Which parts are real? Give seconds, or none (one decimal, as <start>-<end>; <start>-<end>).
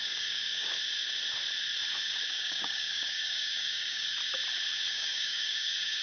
0.7-2.3; 4.2-4.9